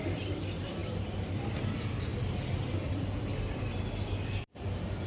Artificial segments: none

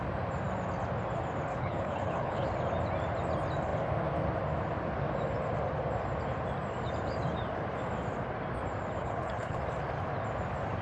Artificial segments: 1.5-2.5 (codec, HILCodec); 9.0-9.6

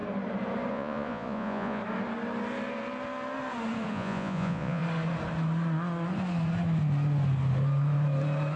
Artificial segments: 0.7-1.8 (vocoder, Vocos); 3.9-4.8

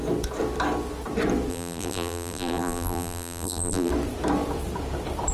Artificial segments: 1.5-3.9 (vocoder, BigVGAN v2)

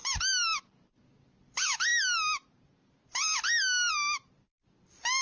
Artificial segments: 0.7-1.9 (vocoder, BigVGAN v2); 3.9-5.2

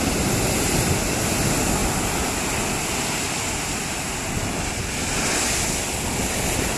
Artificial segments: none

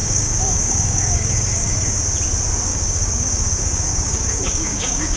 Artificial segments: 0.0-2.0 (codec, DAC); 2.7-5.2

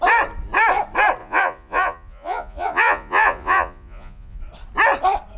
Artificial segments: 1.2-4.4 (vocoder, Vocos)